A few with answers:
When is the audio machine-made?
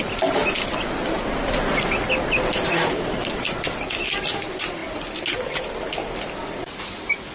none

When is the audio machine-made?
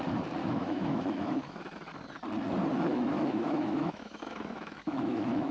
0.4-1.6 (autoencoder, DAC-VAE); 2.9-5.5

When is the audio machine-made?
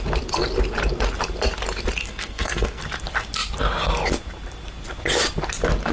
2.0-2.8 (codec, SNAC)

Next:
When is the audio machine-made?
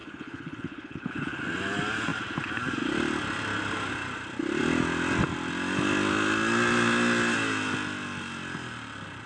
0.0-1.4 (codec, HILCodec)